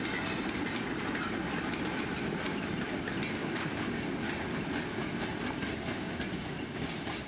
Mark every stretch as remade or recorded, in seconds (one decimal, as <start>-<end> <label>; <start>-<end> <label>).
0.0-3.4 recorded; 3.4-4.0 remade; 4.0-7.3 recorded

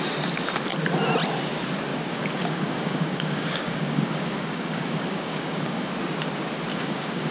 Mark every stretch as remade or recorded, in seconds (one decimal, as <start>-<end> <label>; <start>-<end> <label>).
0.0-1.9 recorded; 1.9-5.9 remade; 5.9-6.7 recorded; 6.7-7.3 remade